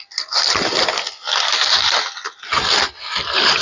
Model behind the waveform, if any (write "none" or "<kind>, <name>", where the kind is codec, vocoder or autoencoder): none